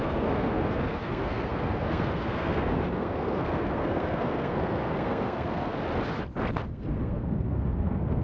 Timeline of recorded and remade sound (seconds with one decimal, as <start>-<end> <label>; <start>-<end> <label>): 0.0-5.7 remade; 5.7-6.7 recorded; 6.7-8.2 remade